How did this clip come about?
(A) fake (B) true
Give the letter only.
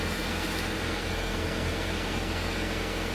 A